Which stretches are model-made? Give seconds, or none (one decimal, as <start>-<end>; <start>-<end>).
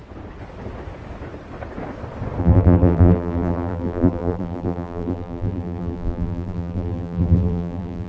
2.4-8.1